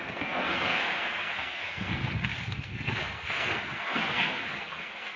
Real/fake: fake